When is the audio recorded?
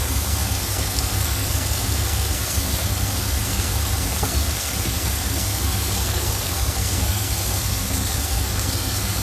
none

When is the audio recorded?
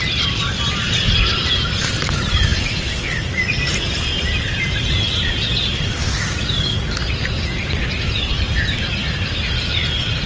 0.0-10.3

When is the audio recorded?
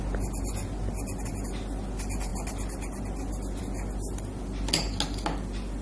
0.0-5.8